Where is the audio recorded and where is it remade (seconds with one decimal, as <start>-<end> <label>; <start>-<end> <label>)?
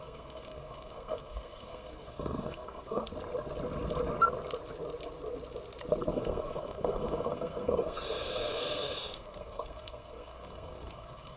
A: 0.0-3.0 remade; 3.0-6.1 recorded; 6.1-11.4 remade